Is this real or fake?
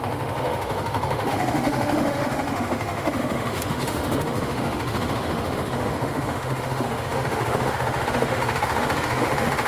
fake